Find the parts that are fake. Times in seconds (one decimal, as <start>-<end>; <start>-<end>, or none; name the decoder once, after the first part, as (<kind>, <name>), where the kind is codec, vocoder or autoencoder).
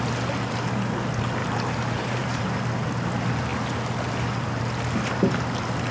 1.4-2.4 (vocoder, BigVGAN v2)